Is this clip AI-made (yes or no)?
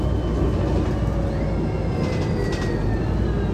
no